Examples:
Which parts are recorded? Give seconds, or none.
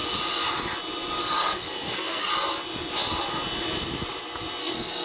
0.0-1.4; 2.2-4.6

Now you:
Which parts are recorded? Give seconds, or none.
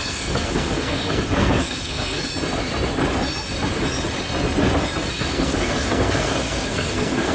2.3-5.1